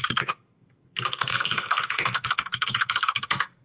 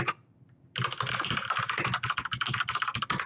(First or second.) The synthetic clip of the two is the first